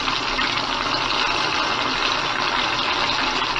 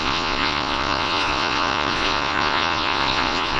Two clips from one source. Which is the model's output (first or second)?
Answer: second